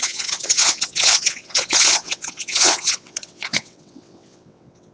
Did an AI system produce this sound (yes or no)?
yes